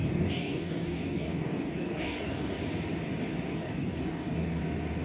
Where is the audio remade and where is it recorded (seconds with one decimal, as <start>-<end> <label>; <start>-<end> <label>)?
0.0-2.6 remade; 2.6-3.5 recorded; 3.5-4.6 remade; 4.6-5.0 recorded